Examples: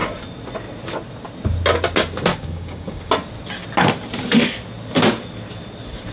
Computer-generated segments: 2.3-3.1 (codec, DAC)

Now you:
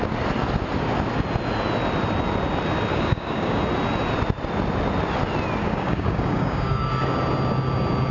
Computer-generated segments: 2.9-3.6 (codec, DAC); 5.6-6.9

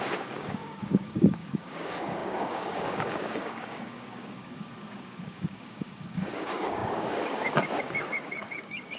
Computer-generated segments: 0.0-9.0 (codec, DAC)